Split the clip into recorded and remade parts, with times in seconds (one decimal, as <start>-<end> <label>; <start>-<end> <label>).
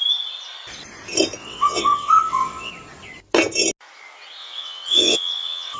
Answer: 0.0-1.4 recorded; 1.4-2.7 remade; 2.7-4.4 recorded; 4.4-5.8 remade